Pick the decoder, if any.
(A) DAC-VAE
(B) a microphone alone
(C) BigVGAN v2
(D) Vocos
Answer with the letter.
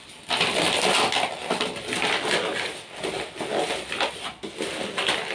B